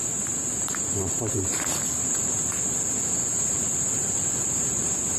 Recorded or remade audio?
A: remade